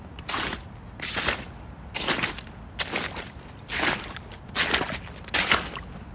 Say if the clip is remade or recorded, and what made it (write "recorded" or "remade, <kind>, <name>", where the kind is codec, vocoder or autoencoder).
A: recorded